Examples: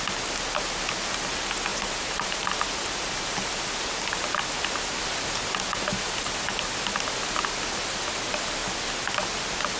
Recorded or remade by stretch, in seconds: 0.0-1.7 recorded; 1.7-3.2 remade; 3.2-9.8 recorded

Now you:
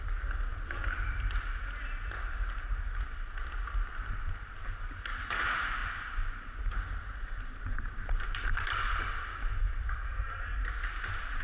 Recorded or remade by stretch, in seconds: 0.0-11.4 recorded